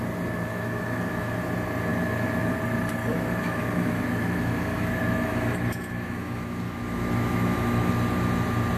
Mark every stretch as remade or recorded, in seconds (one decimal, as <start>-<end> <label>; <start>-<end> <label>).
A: 0.0-0.5 recorded; 0.5-1.4 remade; 1.4-1.9 recorded; 1.9-2.5 remade; 2.5-3.0 recorded; 3.0-7.9 remade; 7.9-8.8 recorded